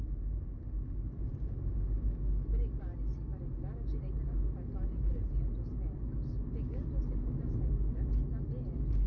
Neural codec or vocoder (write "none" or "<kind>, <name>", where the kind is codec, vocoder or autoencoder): none